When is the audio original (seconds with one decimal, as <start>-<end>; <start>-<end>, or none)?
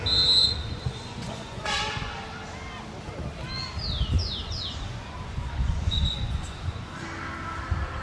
0.0-0.4; 2.1-4.2; 7.0-8.0